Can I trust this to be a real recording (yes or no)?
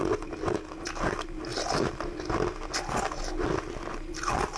yes